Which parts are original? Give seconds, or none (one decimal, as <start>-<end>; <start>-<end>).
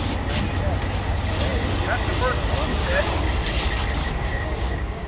0.0-2.7; 3.2-4.0